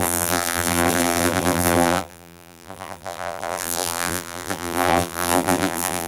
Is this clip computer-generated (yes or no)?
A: yes